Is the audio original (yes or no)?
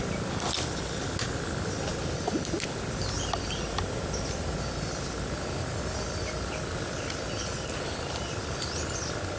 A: yes